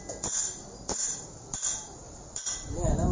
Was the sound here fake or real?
real